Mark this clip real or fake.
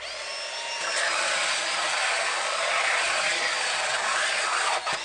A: real